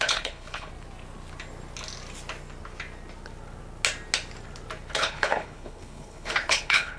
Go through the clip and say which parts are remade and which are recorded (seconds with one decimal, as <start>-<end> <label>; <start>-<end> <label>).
0.0-0.7 remade; 0.7-4.9 recorded; 4.9-7.0 remade